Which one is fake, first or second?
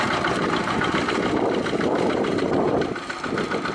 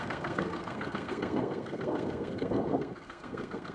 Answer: second